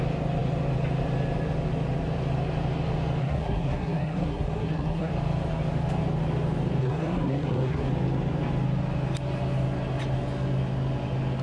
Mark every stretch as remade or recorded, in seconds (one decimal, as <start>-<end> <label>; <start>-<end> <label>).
0.0-3.2 recorded; 3.2-5.1 remade; 5.1-6.8 recorded; 6.8-7.9 remade; 7.9-11.4 recorded